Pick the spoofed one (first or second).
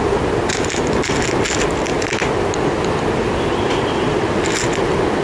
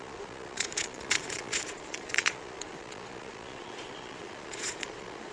second